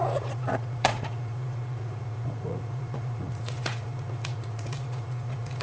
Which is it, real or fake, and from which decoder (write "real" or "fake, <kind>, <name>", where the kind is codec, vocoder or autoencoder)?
fake, vocoder, Vocos